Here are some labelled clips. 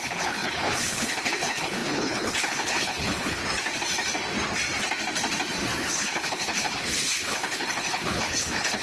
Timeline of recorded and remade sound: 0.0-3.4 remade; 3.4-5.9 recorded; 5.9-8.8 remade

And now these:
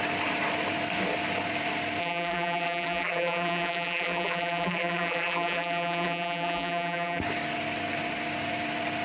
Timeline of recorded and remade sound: 0.0-2.0 recorded; 2.0-7.2 remade; 7.2-9.0 recorded

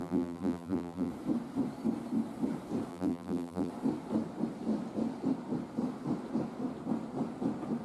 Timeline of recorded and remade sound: 0.0-1.1 remade; 1.1-2.9 recorded; 2.9-3.7 remade; 3.7-7.8 recorded